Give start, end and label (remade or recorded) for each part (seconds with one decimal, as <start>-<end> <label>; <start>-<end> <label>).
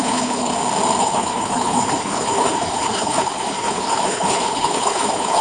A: 0.0-0.5 remade; 0.5-1.0 recorded; 1.0-5.4 remade